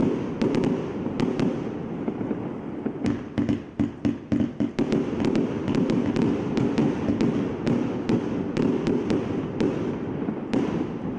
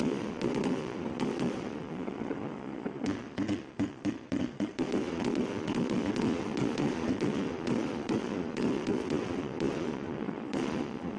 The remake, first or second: second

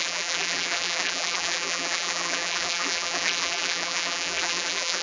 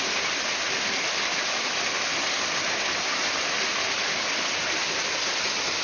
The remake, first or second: first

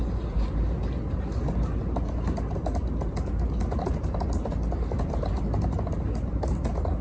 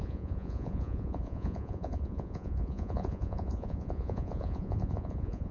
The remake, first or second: second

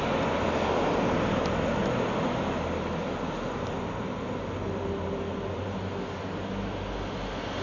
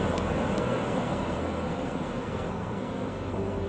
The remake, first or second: second